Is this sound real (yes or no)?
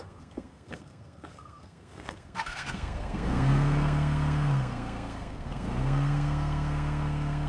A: no